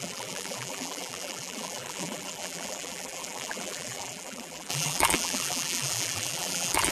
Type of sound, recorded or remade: remade